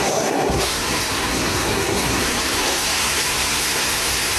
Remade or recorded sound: remade